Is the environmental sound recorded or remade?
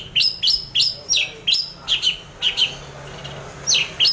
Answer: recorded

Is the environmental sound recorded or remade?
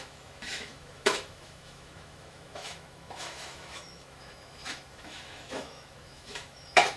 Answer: remade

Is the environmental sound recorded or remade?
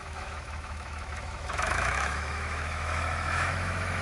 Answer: remade